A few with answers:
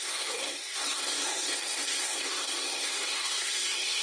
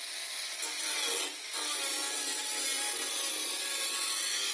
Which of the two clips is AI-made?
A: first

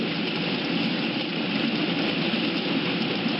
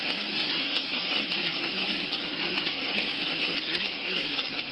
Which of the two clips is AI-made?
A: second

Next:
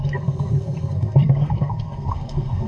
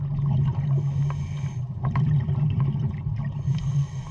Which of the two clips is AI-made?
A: first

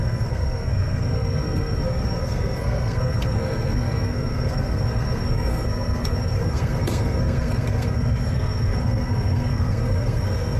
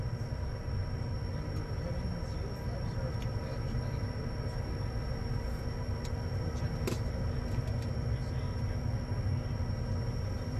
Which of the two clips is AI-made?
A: first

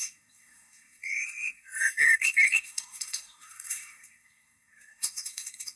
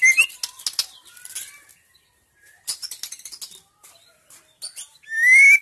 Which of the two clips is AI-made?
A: first